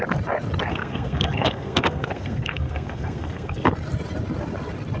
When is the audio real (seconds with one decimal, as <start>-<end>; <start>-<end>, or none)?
0.0-0.7; 3.7-5.0